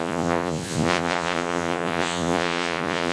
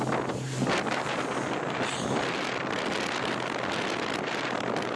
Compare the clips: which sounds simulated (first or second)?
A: first